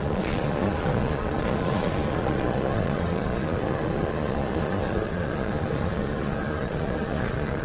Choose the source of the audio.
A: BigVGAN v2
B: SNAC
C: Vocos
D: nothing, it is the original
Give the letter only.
C